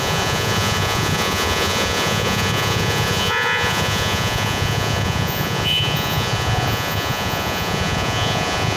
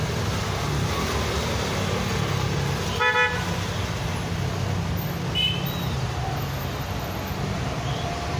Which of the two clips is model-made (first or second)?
first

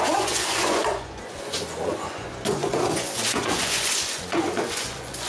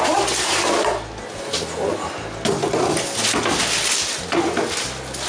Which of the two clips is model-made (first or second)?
first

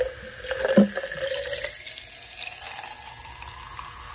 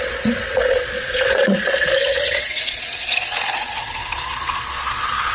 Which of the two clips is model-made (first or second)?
second